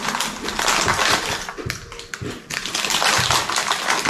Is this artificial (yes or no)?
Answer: no